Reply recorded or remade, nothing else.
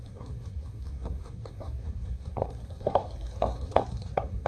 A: remade